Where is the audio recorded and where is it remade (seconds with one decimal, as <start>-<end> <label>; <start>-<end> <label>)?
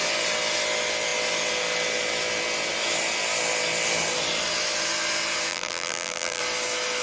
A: 0.0-5.5 recorded; 5.5-6.4 remade; 6.4-7.0 recorded